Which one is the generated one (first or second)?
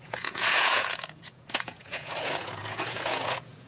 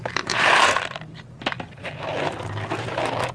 first